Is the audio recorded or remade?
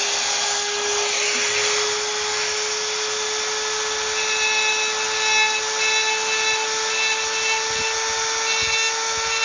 recorded